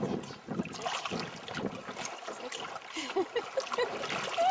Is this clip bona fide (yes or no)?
yes